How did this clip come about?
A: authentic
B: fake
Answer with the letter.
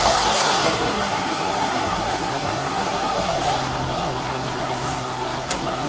B